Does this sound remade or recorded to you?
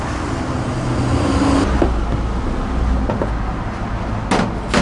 recorded